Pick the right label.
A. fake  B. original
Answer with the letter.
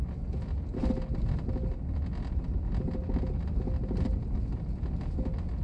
B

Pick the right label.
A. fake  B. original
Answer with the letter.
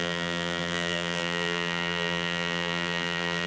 A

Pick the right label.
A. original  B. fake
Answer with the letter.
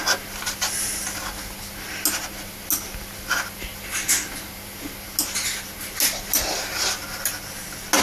A